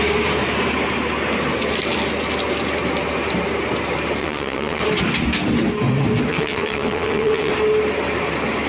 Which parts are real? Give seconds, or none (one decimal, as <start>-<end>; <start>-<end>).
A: 0.0-4.2; 4.8-6.3; 7.5-8.7